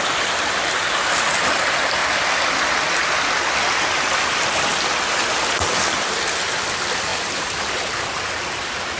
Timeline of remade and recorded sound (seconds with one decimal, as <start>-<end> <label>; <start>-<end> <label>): 0.0-9.0 recorded